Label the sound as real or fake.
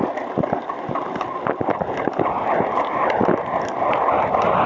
real